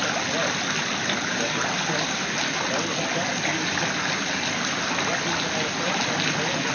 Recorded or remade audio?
recorded